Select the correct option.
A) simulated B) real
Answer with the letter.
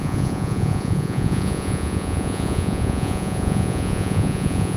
A